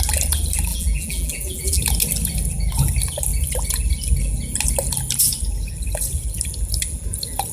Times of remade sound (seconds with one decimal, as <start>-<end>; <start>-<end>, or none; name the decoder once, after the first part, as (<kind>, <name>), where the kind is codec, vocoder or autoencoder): 0.7-1.8 (vocoder, BigVGAN v2)